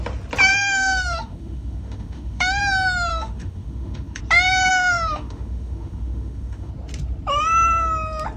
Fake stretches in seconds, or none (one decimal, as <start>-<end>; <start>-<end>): 0.5-2.6; 3.1-4.2; 4.7-6.7